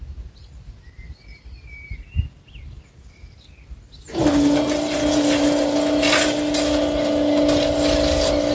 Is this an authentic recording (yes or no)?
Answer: yes